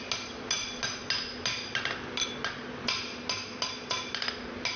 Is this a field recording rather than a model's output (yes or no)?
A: yes